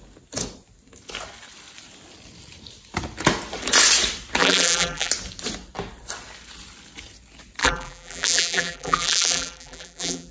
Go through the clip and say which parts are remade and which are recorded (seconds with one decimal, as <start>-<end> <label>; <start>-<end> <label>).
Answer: 0.0-4.4 recorded; 4.4-5.1 remade; 5.1-7.6 recorded; 7.6-10.3 remade